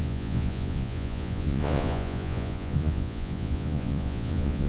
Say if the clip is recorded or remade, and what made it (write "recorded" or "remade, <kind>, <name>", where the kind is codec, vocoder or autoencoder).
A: remade, vocoder, Vocos